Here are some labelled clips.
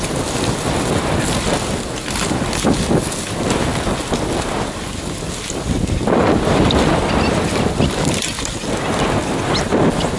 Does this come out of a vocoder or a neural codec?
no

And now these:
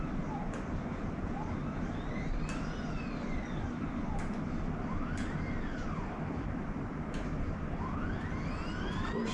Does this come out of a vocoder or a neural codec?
no